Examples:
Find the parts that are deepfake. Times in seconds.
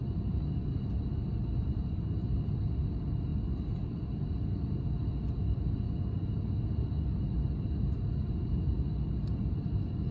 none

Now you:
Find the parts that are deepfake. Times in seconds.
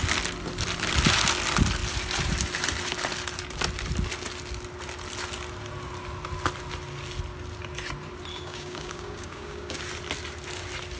8.3-9.8